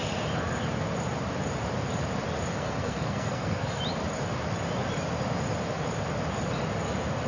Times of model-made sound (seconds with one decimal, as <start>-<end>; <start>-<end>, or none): 2.5-3.8